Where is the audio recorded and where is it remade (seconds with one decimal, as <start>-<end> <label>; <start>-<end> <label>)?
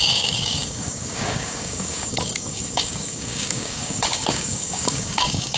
0.0-5.6 remade